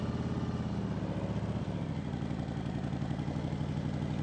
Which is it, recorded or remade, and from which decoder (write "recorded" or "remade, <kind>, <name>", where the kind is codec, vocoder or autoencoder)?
recorded